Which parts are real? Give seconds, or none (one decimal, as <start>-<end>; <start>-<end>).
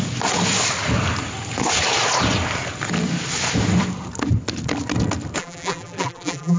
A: 0.0-5.4